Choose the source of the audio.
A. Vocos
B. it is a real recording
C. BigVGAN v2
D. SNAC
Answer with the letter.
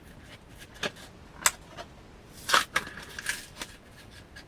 B